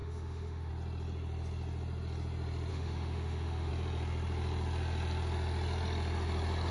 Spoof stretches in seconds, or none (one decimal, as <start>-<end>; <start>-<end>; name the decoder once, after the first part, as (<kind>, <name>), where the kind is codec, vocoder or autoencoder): 0.0-0.7 (autoencoder, DAC-VAE); 2.7-3.7

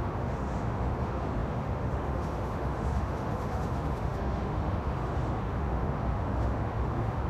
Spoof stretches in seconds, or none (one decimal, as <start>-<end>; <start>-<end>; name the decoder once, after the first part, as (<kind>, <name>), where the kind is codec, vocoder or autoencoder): 0.0-7.3 (autoencoder, DAC-VAE)